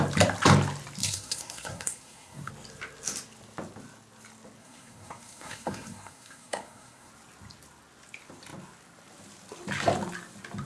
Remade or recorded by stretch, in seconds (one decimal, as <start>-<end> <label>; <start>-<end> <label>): 0.0-1.0 recorded; 1.0-2.5 remade; 2.5-4.6 recorded; 4.6-7.1 remade; 7.1-10.7 recorded